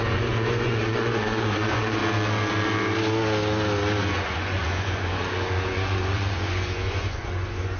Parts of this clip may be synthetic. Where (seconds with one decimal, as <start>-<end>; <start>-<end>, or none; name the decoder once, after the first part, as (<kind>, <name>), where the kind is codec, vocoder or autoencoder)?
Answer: 0.0-2.0 (vocoder, Vocos); 4.0-7.8